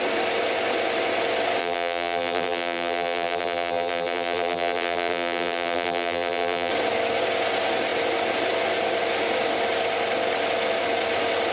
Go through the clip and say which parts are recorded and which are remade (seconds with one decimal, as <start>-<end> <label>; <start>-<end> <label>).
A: 0.0-1.6 recorded; 1.6-6.7 remade; 6.7-11.5 recorded